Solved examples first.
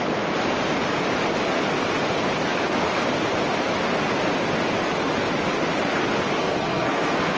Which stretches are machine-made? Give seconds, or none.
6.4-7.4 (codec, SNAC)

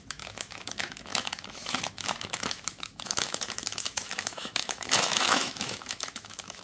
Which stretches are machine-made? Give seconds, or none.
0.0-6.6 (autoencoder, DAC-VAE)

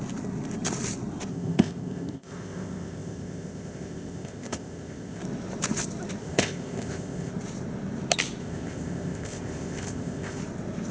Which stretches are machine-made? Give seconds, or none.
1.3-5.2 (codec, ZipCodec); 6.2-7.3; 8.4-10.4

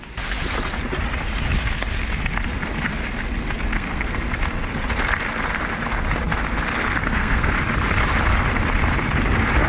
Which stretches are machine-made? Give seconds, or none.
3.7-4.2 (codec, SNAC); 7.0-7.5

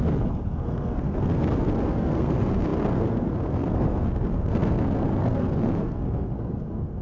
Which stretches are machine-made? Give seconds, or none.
0.0-7.0 (codec, SNAC)

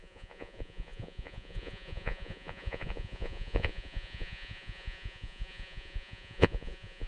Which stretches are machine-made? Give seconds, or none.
0.0-7.1 (vocoder, Vocos)

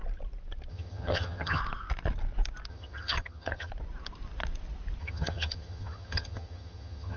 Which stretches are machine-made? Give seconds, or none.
0.7-1.6 (vocoder, HiFi-GAN); 2.7-3.7; 5.0-7.2

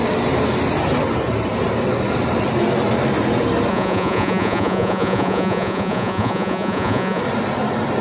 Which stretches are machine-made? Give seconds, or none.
3.7-7.2 (vocoder, Vocos)